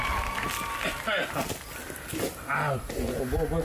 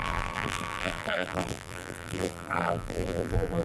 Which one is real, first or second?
first